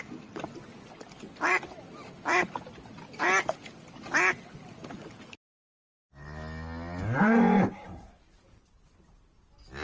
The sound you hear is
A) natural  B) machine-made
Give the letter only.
A